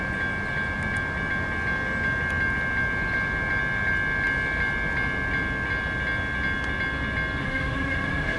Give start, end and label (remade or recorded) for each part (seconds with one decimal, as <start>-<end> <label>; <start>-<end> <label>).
0.0-7.4 recorded; 7.4-8.4 remade